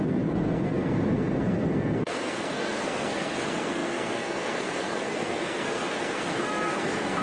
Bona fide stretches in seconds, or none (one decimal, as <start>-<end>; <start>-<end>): none